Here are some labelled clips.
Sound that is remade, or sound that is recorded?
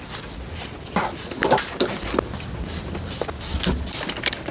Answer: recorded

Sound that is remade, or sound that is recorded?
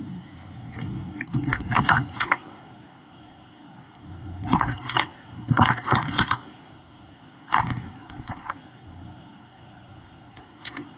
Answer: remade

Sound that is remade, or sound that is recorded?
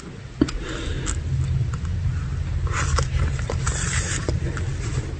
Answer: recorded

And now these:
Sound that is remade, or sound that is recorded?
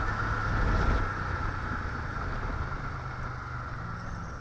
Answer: recorded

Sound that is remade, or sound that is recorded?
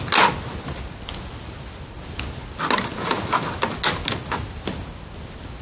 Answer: recorded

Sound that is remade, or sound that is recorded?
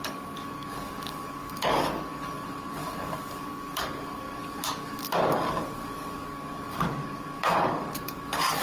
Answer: remade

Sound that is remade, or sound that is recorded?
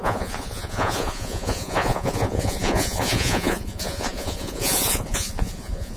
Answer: remade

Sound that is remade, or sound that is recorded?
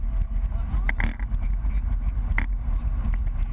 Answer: recorded